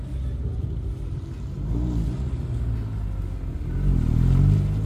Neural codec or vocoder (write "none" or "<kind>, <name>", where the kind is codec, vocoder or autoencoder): none